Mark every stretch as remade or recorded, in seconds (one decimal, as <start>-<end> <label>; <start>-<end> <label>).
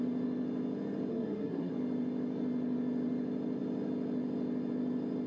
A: 0.0-1.1 recorded; 1.1-1.7 remade; 1.7-5.3 recorded